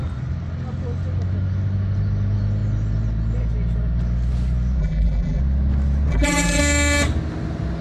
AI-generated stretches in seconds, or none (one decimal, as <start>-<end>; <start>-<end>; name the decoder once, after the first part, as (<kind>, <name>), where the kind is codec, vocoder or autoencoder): 4.8-5.4 (vocoder, BigVGAN v2); 6.1-6.6